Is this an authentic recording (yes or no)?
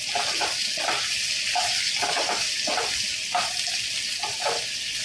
yes